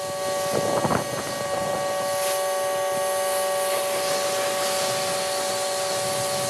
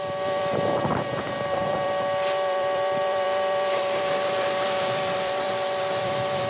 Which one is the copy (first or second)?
second